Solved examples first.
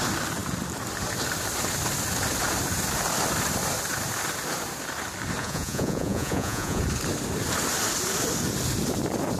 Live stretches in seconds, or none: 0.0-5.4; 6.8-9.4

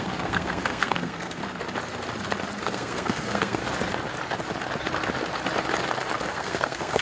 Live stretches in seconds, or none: 1.4-2.6; 3.6-6.3

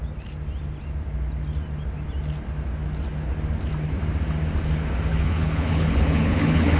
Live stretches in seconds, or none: 0.0-5.1

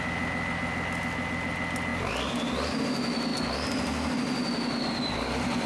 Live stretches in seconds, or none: 0.0-5.7